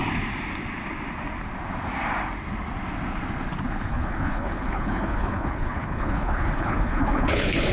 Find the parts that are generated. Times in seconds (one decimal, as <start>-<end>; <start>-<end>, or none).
3.9-7.7